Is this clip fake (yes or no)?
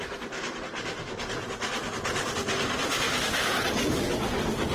no